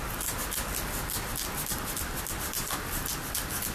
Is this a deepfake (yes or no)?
no